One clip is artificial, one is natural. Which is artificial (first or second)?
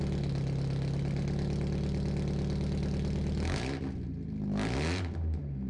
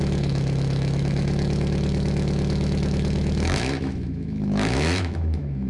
second